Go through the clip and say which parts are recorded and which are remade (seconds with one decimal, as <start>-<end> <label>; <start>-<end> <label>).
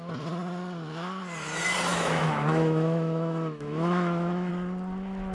0.0-1.9 recorded; 1.9-4.5 remade; 4.5-5.3 recorded